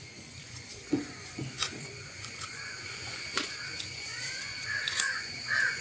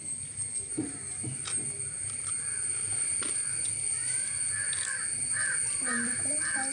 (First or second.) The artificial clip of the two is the first